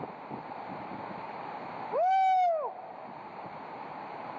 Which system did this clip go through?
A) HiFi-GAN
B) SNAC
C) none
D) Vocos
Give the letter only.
C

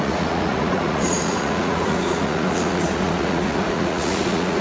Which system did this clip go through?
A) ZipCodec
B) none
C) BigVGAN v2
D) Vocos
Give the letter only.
D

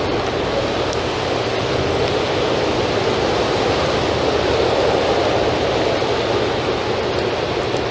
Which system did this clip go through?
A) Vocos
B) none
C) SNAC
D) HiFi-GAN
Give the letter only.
B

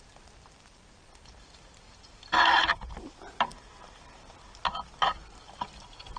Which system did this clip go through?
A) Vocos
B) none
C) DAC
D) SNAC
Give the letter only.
B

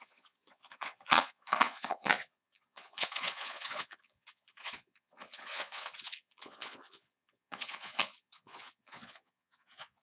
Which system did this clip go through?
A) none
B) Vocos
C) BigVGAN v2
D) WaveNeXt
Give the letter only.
B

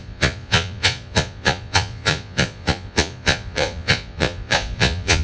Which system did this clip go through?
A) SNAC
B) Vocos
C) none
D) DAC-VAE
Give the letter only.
B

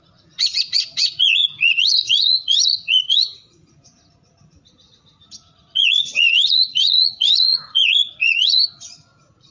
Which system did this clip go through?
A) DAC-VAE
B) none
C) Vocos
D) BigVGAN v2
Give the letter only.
C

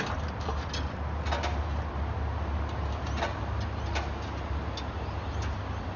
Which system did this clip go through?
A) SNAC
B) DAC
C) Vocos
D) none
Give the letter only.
D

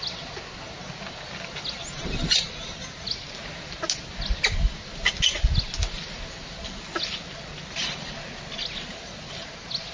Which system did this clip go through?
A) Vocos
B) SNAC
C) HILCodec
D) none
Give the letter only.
D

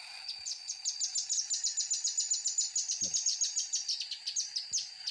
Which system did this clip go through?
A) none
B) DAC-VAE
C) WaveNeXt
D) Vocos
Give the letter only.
A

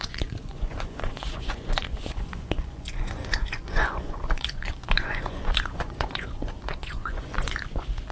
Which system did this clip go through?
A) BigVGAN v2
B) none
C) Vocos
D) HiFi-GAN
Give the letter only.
C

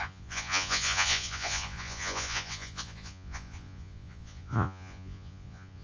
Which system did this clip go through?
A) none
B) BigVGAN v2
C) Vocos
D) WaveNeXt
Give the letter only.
C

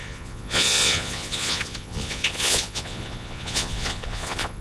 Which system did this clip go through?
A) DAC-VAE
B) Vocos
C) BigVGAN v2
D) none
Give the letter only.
B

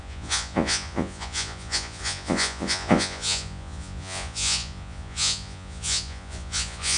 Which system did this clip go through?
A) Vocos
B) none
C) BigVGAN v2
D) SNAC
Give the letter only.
A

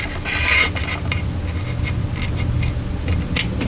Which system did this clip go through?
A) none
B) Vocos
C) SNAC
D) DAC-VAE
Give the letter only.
A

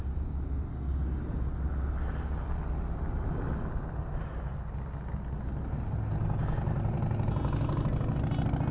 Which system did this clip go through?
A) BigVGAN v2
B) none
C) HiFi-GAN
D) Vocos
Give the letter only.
B